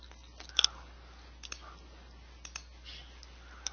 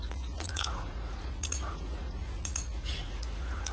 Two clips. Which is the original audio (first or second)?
first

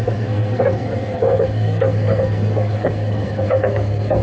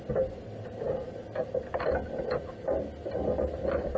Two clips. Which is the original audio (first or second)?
second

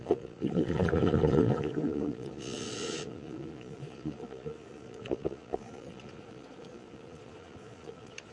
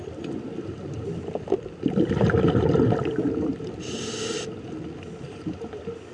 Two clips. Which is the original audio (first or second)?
second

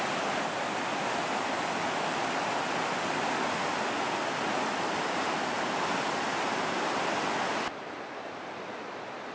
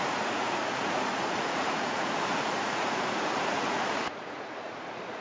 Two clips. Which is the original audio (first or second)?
first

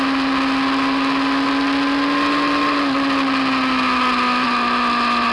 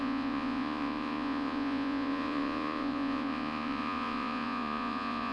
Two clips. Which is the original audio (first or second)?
first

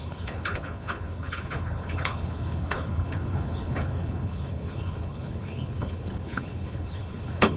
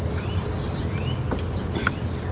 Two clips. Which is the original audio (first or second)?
second